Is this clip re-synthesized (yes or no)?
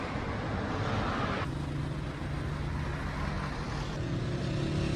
no